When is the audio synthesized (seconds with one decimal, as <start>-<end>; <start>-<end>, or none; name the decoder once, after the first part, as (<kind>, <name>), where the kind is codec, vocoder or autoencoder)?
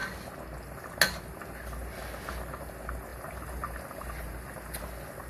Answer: 3.1-4.8 (vocoder, BigVGAN v2)